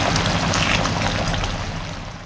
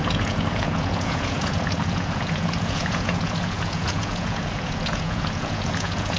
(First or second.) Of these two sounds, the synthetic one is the second